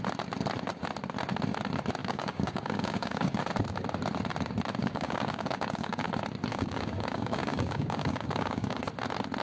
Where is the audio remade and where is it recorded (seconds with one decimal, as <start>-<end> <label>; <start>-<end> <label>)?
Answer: 0.0-2.0 recorded; 2.0-3.4 remade; 3.4-4.8 recorded; 4.8-6.1 remade; 6.1-6.5 recorded; 6.5-8.8 remade; 8.8-9.4 recorded